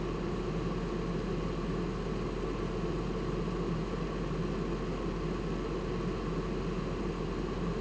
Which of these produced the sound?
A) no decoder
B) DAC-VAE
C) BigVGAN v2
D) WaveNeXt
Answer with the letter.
A